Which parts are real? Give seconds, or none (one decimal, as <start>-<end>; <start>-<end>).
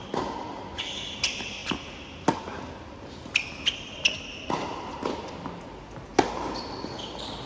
0.0-7.5